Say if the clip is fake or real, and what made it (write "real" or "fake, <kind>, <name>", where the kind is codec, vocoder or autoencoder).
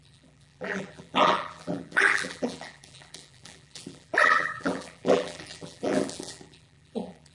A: fake, vocoder, BigVGAN v2